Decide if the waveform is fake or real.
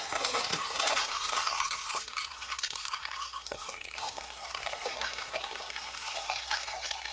fake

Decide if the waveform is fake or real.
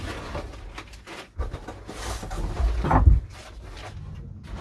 real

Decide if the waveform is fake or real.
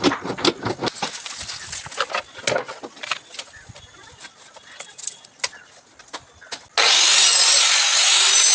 real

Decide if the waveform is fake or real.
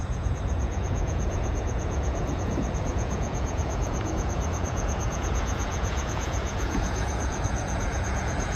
fake